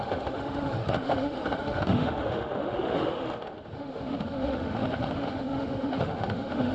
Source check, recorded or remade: remade